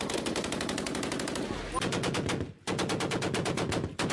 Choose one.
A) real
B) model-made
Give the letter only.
A